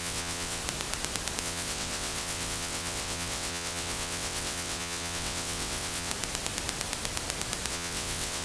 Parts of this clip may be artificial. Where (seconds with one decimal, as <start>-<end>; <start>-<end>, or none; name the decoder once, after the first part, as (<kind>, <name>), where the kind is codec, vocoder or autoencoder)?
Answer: 0.0-0.6 (vocoder, WaveNeXt); 1.4-6.1; 7.7-8.4